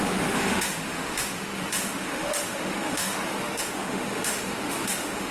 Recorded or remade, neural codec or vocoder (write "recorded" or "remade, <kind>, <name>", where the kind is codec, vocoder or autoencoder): remade, autoencoder, DAC-VAE